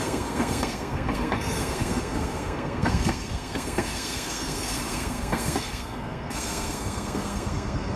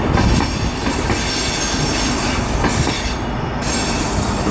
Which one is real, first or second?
second